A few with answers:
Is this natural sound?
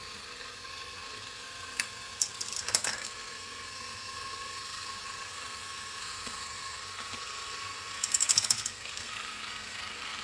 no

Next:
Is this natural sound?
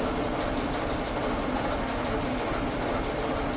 yes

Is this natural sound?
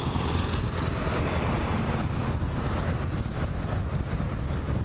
no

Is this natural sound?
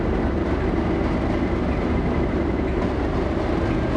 yes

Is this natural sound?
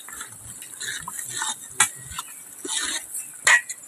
yes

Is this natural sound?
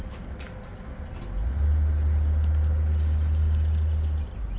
yes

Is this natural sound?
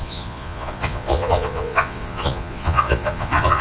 no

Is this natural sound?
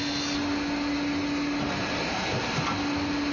yes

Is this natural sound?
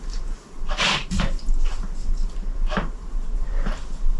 no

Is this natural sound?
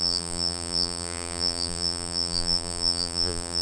no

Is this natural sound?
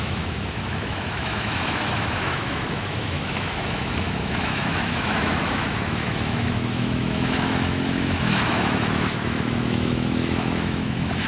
no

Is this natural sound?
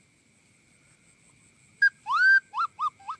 yes